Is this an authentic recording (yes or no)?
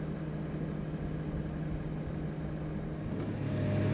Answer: yes